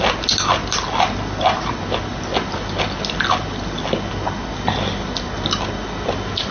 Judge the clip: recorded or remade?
recorded